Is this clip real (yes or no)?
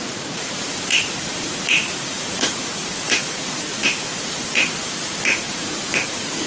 no